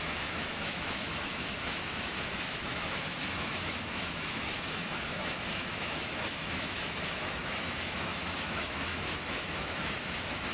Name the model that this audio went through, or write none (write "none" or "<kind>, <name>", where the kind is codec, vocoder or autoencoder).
autoencoder, DAC-VAE